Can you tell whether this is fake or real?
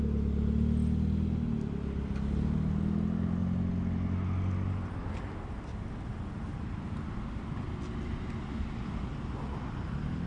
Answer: real